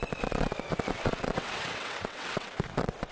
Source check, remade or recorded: remade